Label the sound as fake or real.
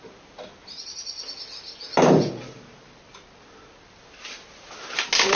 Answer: real